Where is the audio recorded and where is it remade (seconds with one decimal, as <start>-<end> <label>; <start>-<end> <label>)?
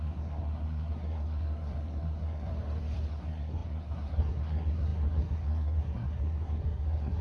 0.0-2.5 remade; 2.5-3.1 recorded; 3.1-7.2 remade